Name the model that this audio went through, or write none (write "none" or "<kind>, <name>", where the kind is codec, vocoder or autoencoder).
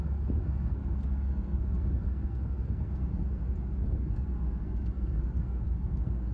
codec, SNAC